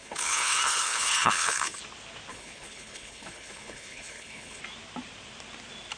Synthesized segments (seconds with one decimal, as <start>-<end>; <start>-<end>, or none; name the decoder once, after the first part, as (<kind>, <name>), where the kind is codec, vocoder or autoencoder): 0.0-1.8 (codec, HILCodec); 2.3-4.6

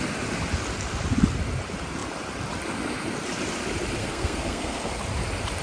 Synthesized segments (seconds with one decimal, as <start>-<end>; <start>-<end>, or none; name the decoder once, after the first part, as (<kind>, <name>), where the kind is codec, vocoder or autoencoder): 4.0-5.0 (codec, SNAC)

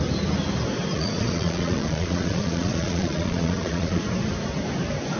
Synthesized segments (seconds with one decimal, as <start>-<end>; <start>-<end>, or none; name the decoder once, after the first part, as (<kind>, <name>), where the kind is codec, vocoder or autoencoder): 0.9-4.0 (vocoder, Vocos)

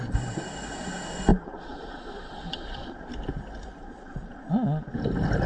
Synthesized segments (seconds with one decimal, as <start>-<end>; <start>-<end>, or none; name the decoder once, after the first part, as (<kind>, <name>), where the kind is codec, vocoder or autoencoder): 1.3-3.1 (vocoder, Vocos); 3.8-4.9

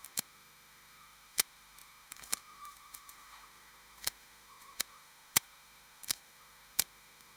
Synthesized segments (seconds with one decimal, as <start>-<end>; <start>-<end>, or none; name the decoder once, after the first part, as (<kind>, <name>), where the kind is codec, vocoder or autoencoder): 0.0-7.4 (autoencoder, DAC-VAE)

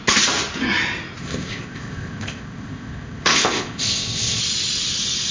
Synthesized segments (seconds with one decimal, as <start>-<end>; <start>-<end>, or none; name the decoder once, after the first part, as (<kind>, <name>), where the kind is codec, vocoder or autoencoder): 1.2-4.4 (codec, ZipCodec)